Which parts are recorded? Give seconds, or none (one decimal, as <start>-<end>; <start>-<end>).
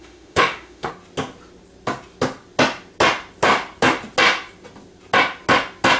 0.9-6.0